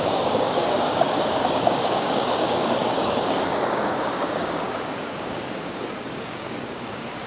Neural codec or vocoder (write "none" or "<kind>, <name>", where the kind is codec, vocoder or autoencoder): codec, DAC